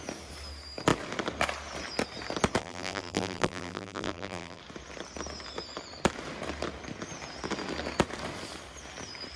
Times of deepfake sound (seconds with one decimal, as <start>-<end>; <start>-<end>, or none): 2.6-4.6